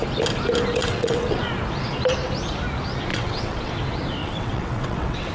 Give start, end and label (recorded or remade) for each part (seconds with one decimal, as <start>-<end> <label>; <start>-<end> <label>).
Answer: 0.0-0.8 recorded; 0.8-1.4 remade; 1.4-3.1 recorded; 3.1-3.7 remade; 3.7-4.2 recorded; 4.2-5.3 remade